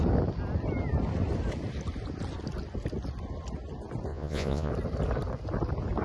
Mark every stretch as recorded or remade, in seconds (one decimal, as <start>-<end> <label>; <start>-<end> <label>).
0.0-4.1 recorded; 4.1-4.7 remade; 4.7-6.0 recorded